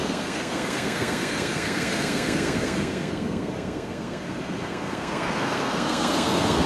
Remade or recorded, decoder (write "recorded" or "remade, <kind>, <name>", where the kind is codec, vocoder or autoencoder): remade, codec, SNAC